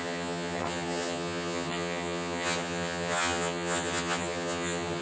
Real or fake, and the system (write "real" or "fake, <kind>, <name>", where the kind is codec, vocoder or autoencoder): fake, vocoder, HiFi-GAN